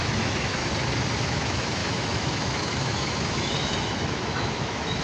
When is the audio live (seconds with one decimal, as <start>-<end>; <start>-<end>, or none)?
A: 0.6-1.2